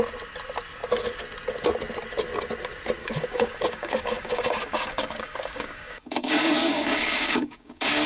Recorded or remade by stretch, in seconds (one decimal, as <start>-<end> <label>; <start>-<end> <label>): 0.0-3.0 recorded; 3.0-8.1 remade